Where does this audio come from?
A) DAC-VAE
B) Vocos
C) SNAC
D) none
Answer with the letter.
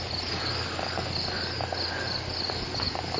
D